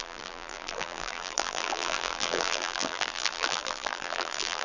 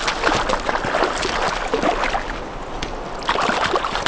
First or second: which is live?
second